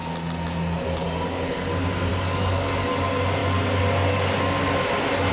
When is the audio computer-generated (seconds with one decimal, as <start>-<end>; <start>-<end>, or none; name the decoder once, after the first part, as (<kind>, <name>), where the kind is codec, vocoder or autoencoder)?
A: 2.1-2.9 (codec, DAC)